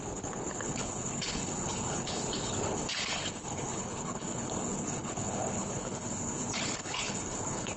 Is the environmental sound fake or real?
fake